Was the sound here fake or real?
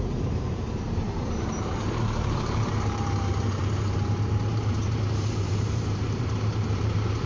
fake